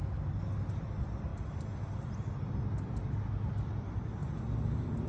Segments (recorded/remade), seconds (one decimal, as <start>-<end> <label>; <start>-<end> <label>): 0.0-5.1 recorded